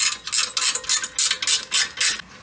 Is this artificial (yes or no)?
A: no